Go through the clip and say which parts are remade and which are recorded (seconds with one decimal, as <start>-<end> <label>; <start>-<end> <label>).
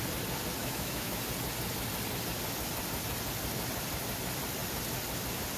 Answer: 0.0-0.6 recorded; 0.6-1.2 remade; 1.2-5.6 recorded